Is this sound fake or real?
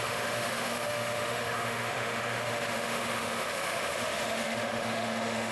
fake